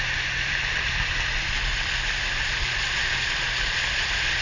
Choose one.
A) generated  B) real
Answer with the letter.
A